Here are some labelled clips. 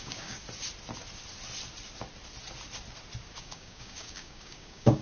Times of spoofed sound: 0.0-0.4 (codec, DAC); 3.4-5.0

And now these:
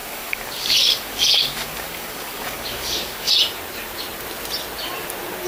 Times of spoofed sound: 0.0-3.3 (codec, DAC)

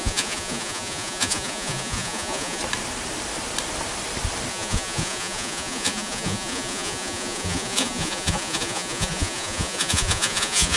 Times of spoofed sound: 0.0-2.6 (vocoder, Vocos); 4.5-10.8

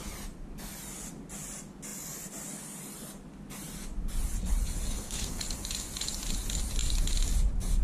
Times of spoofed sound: 4.9-5.4 (codec, SNAC)

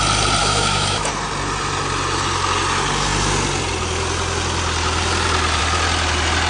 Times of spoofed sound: 0.4-1.1 (autoencoder, DAC-VAE)

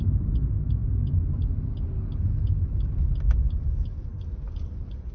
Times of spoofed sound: none

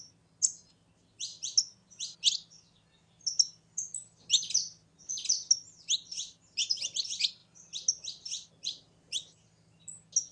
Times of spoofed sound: none

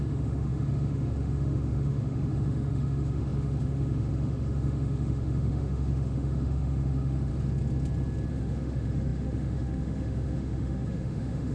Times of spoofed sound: 0.0-7.3 (autoencoder, DAC-VAE); 8.3-11.5